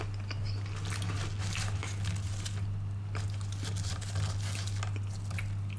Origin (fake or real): real